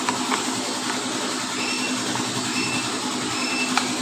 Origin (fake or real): real